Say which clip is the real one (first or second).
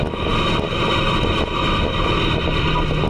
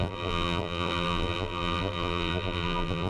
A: first